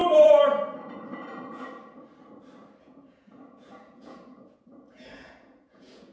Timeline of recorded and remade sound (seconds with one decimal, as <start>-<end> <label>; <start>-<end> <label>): 0.0-2.8 recorded; 2.8-6.1 remade